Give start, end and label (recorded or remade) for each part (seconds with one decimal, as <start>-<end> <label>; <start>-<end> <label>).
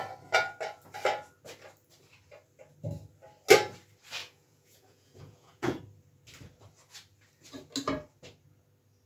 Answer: 0.0-4.2 recorded; 4.2-5.8 remade; 5.8-9.1 recorded